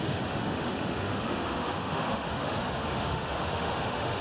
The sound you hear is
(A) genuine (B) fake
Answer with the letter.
B